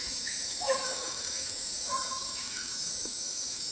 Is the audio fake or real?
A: fake